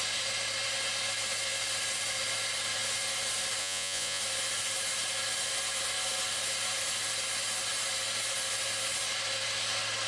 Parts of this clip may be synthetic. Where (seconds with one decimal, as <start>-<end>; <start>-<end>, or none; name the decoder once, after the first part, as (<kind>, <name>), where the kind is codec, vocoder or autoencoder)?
3.6-4.2 (vocoder, Vocos)